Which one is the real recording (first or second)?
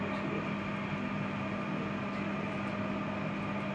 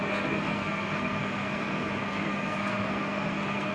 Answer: first